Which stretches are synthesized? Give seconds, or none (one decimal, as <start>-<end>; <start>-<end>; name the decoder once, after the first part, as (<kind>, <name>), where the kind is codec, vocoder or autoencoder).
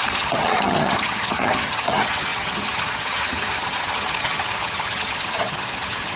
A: 0.0-6.2 (vocoder, HiFi-GAN)